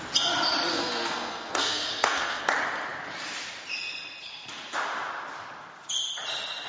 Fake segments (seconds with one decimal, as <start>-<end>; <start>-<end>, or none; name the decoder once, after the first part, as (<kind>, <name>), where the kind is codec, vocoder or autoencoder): 0.7-2.4 (codec, SNAC)